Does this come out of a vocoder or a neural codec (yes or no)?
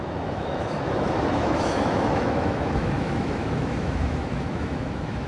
yes